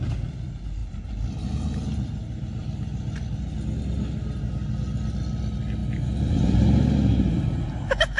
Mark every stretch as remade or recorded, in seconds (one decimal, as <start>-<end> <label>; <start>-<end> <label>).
0.0-8.2 recorded